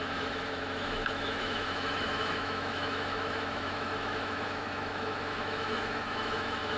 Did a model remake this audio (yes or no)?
yes